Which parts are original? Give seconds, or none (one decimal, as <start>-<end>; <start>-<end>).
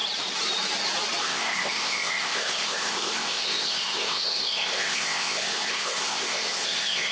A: 0.0-1.2